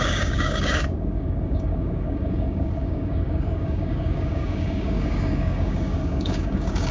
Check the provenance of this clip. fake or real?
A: fake